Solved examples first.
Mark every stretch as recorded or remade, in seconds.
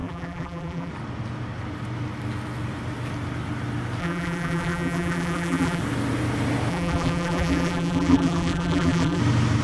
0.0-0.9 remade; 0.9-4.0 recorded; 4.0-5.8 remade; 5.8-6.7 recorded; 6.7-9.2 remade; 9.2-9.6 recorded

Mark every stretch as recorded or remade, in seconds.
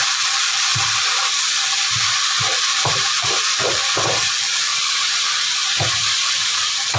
0.0-4.7 remade; 4.7-6.2 recorded; 6.2-7.0 remade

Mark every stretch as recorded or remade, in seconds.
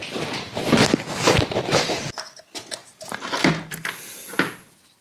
0.0-2.8 recorded; 2.8-3.5 remade; 3.5-5.0 recorded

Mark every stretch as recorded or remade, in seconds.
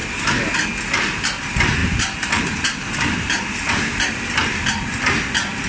0.0-0.6 remade; 0.6-1.8 recorded; 1.8-5.2 remade; 5.2-5.7 recorded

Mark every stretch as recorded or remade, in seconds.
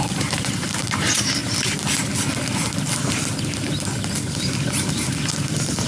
0.0-1.4 remade; 1.4-4.9 recorded; 4.9-5.9 remade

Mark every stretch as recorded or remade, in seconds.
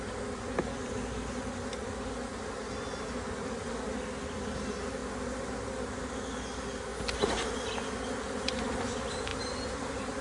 0.0-9.3 recorded; 9.3-10.2 remade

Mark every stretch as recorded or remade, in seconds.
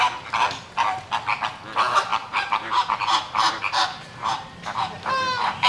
0.0-2.1 recorded; 2.1-5.7 remade